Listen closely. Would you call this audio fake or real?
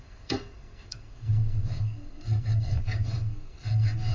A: fake